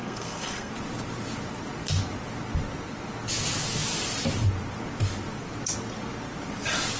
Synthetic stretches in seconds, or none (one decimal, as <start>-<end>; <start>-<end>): 0.0-0.7